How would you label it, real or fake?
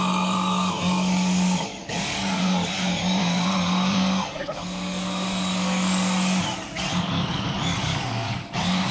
fake